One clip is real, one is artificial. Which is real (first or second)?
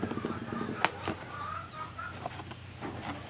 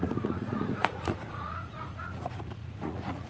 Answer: first